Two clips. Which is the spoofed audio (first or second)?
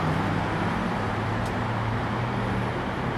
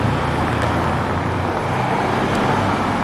first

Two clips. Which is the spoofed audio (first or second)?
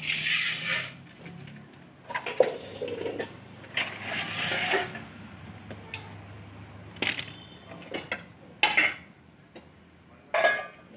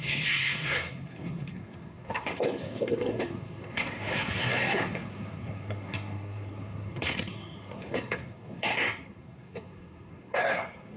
second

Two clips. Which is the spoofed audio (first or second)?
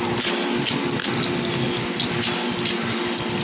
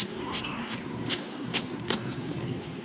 second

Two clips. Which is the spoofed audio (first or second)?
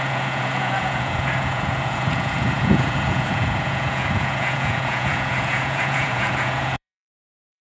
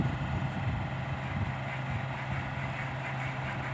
first